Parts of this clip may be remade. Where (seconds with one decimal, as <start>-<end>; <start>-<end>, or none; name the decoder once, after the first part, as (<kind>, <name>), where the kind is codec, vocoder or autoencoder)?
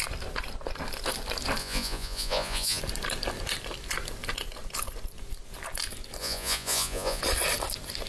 1.6-2.8 (vocoder, Vocos); 6.2-7.2